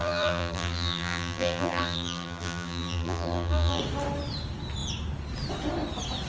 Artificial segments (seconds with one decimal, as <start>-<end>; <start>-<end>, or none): 0.0-3.8